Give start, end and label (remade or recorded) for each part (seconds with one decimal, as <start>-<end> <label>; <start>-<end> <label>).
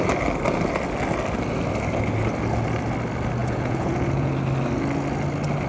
0.0-3.4 recorded; 3.4-4.3 remade; 4.3-5.7 recorded